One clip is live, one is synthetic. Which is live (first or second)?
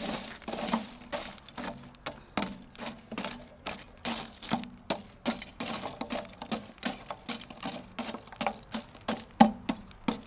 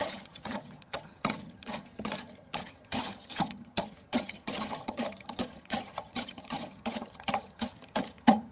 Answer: first